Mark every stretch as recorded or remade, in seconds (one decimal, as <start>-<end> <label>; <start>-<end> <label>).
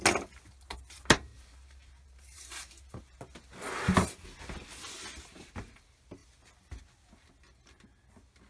0.0-1.3 recorded; 1.3-3.0 remade; 3.0-8.5 recorded